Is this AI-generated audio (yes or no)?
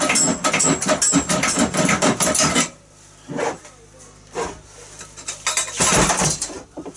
no